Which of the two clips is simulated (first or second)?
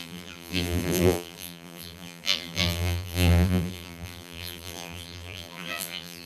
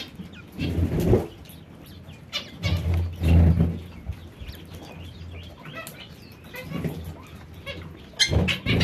first